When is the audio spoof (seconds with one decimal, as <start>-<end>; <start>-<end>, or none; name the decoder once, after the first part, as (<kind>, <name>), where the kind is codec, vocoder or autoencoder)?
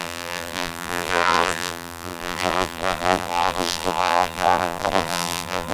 0.0-5.7 (vocoder, BigVGAN v2)